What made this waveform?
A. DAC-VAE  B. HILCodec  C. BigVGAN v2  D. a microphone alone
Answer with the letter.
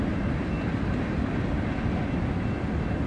D